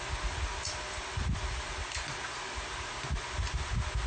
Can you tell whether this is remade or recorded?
recorded